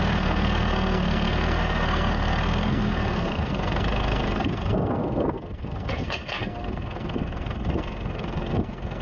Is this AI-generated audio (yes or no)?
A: yes